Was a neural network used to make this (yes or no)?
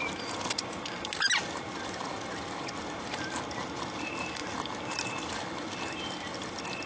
no